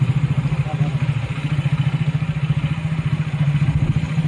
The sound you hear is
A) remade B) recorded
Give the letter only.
B